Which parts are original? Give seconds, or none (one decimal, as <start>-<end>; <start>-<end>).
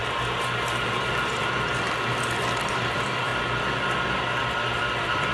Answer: 0.0-0.9; 3.3-4.7